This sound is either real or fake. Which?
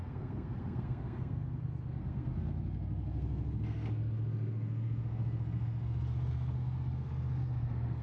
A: fake